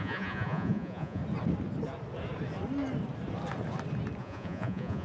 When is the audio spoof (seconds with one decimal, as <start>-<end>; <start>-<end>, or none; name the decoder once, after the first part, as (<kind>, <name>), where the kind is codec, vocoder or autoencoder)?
0.0-1.2 (vocoder, Vocos); 4.2-5.0